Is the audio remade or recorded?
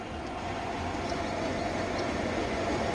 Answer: remade